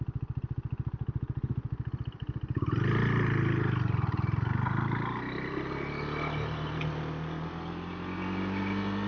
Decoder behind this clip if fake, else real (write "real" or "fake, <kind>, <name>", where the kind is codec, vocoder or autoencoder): real